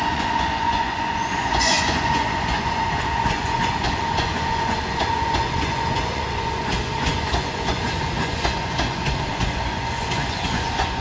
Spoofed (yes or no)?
yes